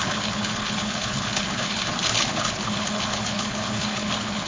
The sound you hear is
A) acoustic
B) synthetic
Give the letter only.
B